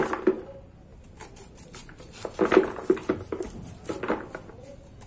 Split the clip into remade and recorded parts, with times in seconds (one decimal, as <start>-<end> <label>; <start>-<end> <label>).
0.0-5.1 recorded